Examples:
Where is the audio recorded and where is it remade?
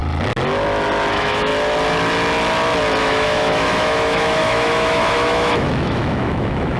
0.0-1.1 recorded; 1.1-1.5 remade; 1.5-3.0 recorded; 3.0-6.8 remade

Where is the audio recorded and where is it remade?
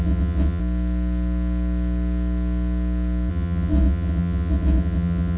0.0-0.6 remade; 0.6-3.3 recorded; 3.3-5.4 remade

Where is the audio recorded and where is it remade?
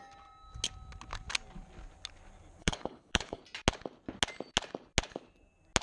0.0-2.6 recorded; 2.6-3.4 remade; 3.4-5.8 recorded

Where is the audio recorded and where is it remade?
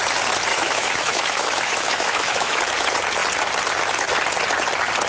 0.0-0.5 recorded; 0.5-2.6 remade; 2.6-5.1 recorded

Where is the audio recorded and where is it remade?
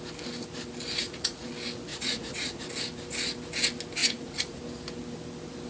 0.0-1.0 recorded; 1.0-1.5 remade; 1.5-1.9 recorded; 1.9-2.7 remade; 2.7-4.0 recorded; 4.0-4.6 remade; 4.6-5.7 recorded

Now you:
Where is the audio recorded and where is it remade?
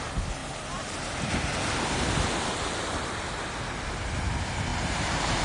0.0-0.4 recorded; 0.4-3.6 remade; 3.6-4.7 recorded; 4.7-5.4 remade